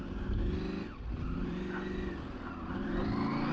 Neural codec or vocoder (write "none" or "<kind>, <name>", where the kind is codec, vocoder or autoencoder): none